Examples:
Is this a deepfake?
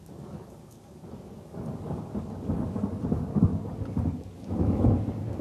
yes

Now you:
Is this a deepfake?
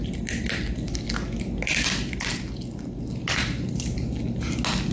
no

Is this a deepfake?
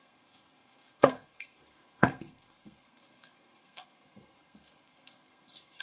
yes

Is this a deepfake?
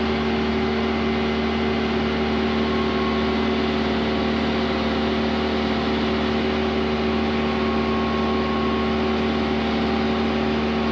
no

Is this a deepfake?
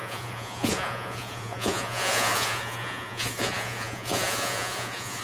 yes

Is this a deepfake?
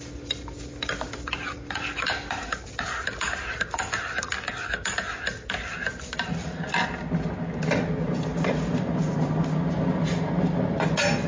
no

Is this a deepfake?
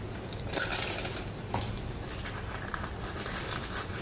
no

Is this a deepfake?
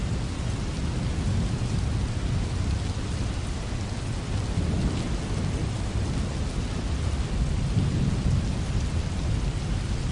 no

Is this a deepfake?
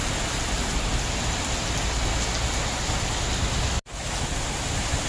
no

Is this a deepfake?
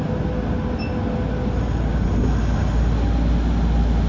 no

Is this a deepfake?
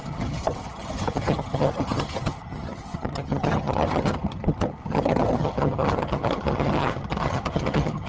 yes